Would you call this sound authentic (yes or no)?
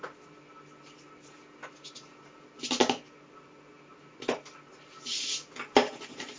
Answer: yes